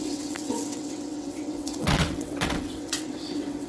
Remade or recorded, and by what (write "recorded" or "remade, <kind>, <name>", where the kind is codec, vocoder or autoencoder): remade, vocoder, WaveNeXt